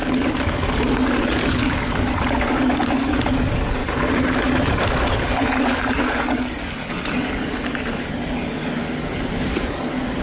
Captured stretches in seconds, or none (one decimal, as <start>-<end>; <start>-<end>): 3.8-4.3